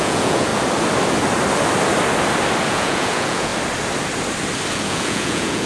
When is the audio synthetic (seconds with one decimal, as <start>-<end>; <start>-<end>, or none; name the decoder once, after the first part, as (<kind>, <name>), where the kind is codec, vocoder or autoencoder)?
0.0-0.5 (vocoder, Vocos); 2.7-3.5; 4.7-5.7